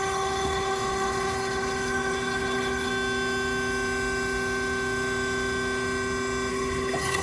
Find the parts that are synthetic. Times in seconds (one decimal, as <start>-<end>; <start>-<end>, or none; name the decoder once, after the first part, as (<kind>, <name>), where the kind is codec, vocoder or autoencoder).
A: 0.0-2.9 (codec, HILCodec); 6.5-7.2